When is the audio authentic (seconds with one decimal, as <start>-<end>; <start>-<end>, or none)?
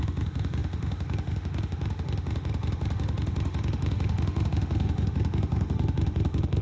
none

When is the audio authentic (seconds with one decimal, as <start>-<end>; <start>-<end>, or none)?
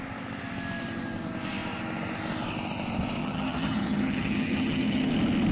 0.0-3.2; 5.1-5.5